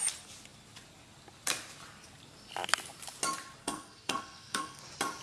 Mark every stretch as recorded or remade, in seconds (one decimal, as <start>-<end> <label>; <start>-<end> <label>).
0.0-3.6 recorded; 3.6-4.8 remade; 4.8-5.2 recorded